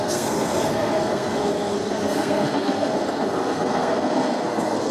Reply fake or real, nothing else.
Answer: fake